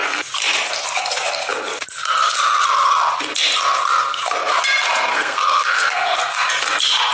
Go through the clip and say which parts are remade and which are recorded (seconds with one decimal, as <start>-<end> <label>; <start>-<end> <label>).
0.0-5.1 recorded; 5.1-6.2 remade; 6.2-7.1 recorded